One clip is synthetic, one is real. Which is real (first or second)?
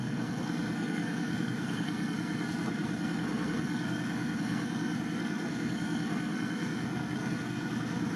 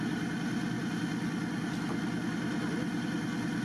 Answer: second